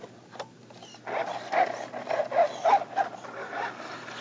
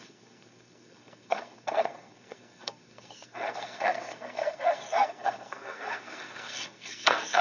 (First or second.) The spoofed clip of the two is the second